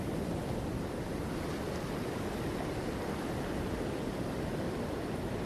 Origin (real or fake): real